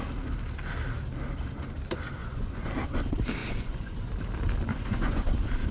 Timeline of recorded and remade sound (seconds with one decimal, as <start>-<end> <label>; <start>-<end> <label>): 0.0-2.2 recorded; 2.2-2.7 remade; 2.7-3.4 recorded; 3.4-4.1 remade; 4.1-4.7 recorded; 4.7-5.3 remade; 5.3-5.7 recorded